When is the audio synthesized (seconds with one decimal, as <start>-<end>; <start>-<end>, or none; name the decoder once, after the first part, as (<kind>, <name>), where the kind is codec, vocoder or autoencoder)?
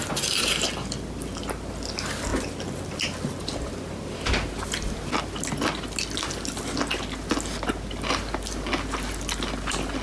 none